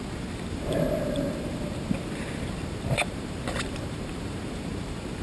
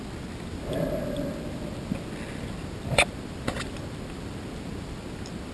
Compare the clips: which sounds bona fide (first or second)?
second